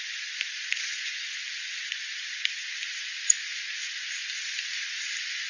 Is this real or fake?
real